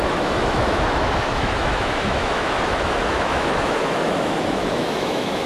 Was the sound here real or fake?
fake